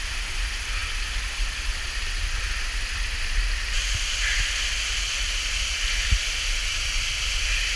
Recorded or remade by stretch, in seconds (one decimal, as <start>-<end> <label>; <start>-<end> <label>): 0.0-7.8 recorded